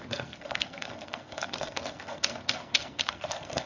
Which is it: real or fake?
fake